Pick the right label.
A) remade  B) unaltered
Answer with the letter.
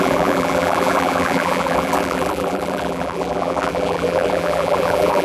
A